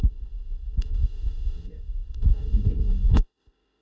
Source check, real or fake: fake